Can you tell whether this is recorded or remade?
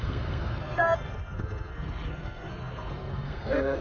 remade